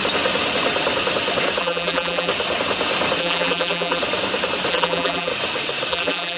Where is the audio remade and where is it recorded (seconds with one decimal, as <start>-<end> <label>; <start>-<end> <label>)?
0.0-1.6 recorded; 1.6-2.3 remade; 2.3-3.2 recorded; 3.2-4.0 remade; 4.0-4.7 recorded; 4.7-5.3 remade; 5.3-5.9 recorded; 5.9-6.4 remade